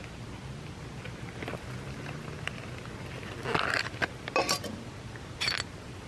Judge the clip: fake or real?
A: real